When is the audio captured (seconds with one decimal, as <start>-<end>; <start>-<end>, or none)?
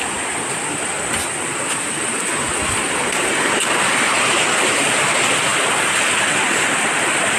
0.0-7.4